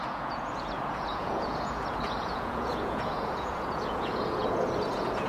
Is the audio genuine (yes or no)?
no